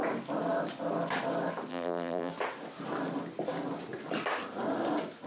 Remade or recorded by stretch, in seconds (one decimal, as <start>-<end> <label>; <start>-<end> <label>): 0.0-1.7 recorded; 1.7-2.3 remade; 2.3-5.3 recorded